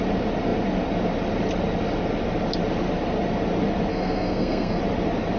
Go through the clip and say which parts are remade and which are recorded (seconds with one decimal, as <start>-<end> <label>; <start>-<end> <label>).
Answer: 0.0-3.9 recorded; 3.9-4.8 remade; 4.8-5.4 recorded